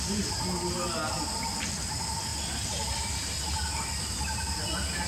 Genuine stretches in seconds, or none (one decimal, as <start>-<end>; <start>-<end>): 0.0-5.1